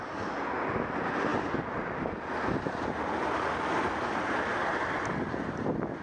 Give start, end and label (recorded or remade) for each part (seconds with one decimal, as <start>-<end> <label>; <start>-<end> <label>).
0.0-6.0 recorded